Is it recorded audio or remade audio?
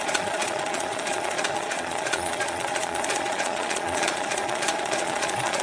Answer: remade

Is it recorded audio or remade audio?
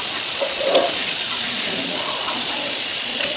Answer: remade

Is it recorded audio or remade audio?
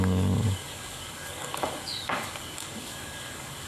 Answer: remade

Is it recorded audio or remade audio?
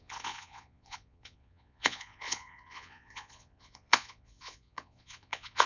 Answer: remade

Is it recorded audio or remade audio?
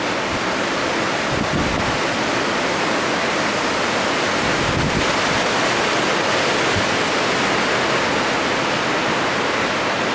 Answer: recorded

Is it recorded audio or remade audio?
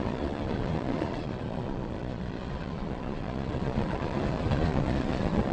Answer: remade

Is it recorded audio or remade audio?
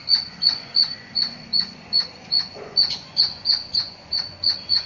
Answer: remade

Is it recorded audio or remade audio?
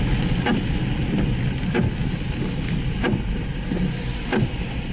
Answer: recorded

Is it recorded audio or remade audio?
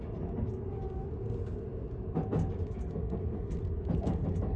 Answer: recorded